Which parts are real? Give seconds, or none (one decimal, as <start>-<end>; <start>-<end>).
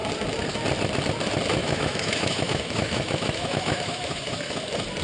0.0-1.6; 4.6-5.0